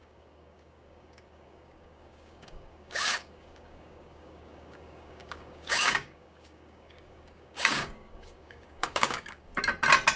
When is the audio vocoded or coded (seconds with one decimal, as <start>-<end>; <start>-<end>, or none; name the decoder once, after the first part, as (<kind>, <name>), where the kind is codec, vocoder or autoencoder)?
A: 0.0-9.5 (codec, DAC)